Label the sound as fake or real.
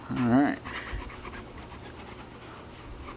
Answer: real